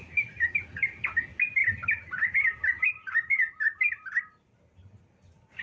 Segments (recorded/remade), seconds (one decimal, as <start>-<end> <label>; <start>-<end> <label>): 0.0-5.6 recorded

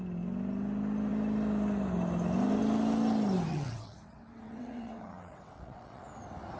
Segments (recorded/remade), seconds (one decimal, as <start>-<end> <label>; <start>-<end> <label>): 0.0-3.5 recorded; 3.5-6.1 remade; 6.1-6.6 recorded

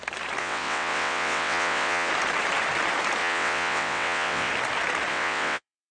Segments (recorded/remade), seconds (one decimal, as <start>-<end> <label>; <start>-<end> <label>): 0.0-0.4 recorded; 0.4-2.1 remade; 2.1-3.2 recorded; 3.2-4.5 remade; 4.5-5.1 recorded; 5.1-5.9 remade

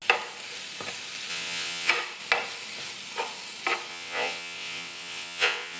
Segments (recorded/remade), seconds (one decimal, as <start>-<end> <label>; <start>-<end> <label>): 0.0-1.3 recorded; 1.3-1.9 remade; 1.9-3.9 recorded; 3.9-5.8 remade

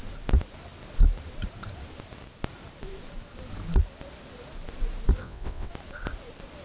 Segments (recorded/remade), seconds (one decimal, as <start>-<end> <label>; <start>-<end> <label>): 0.0-5.2 recorded; 5.2-5.7 remade; 5.7-6.6 recorded